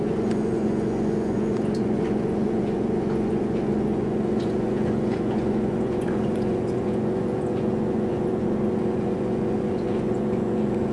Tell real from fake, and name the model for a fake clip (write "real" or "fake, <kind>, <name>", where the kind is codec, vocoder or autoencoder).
fake, vocoder, Vocos